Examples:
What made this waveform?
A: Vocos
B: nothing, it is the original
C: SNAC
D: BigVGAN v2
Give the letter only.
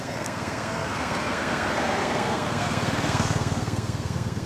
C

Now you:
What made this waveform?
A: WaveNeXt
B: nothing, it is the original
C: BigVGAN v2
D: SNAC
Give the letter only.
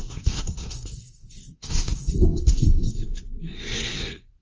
D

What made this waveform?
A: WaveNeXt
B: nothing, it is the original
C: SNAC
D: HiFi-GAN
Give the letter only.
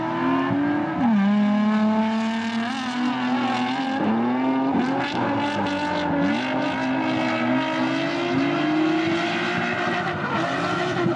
B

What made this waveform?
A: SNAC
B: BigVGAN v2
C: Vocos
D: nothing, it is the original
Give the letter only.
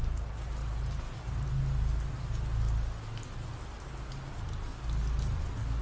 D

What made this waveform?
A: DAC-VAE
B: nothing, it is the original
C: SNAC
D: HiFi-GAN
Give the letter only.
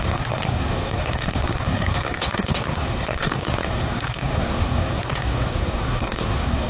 C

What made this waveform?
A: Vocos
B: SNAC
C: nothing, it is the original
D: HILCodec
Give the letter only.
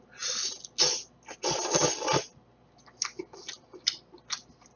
C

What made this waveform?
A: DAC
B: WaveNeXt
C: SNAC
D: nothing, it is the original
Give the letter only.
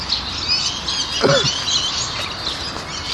D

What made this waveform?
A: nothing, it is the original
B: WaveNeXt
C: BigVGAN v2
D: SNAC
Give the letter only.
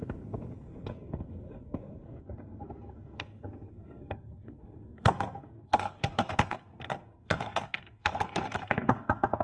D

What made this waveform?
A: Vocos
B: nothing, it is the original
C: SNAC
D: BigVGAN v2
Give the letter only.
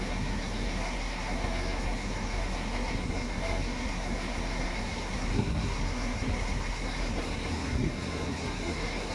C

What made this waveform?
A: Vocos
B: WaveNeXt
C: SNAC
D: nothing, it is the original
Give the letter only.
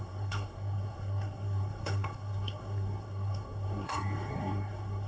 C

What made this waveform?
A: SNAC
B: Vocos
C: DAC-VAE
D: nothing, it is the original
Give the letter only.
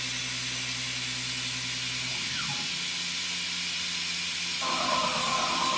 D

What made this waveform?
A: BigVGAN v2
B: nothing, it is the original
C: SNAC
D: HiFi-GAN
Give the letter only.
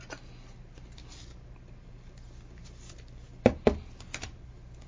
B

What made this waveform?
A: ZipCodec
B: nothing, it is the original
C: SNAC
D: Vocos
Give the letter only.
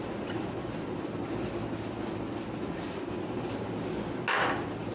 B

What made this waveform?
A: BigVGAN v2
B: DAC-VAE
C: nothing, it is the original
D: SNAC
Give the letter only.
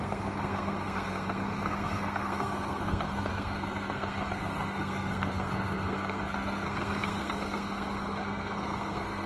D